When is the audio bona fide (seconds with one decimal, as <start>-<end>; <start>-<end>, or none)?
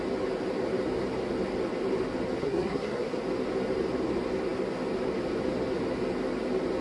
0.0-2.4; 3.2-6.8